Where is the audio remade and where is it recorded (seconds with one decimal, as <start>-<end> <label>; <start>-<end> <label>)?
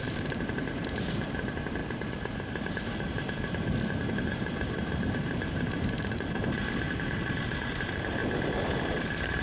0.0-8.2 remade; 8.2-8.8 recorded; 8.8-9.4 remade